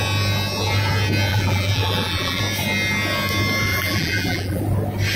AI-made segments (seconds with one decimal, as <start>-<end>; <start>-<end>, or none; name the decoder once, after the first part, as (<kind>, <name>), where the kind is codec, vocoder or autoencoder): 1.3-2.4 (vocoder, BigVGAN v2); 3.7-4.6